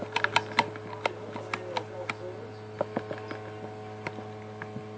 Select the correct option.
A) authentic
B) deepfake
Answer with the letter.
A